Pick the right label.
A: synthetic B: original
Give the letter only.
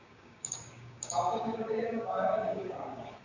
A